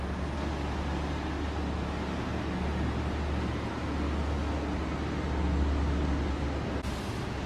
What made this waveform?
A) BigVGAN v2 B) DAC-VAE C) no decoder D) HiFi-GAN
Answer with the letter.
C